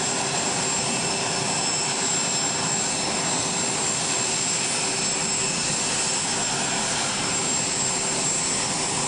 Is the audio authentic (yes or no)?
yes